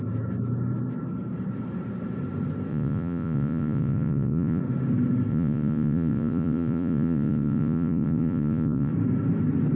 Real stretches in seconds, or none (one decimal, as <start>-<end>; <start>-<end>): 0.0-2.7; 4.6-5.3; 8.9-9.8